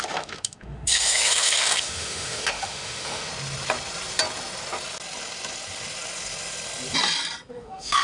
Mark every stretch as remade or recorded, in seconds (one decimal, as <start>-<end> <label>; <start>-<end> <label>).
0.0-3.3 remade; 3.3-7.5 recorded; 7.5-8.0 remade